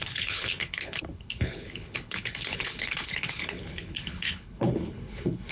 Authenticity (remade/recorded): remade